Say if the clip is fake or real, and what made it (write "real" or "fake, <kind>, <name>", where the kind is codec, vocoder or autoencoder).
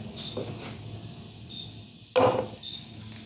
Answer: real